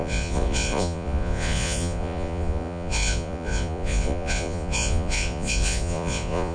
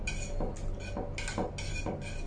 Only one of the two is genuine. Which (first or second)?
second